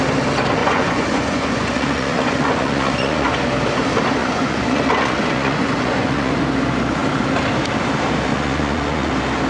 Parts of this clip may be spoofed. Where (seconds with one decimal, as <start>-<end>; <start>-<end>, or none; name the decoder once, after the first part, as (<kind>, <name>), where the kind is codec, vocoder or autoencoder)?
0.6-3.4 (vocoder, Vocos); 4.2-6.3; 8.3-9.1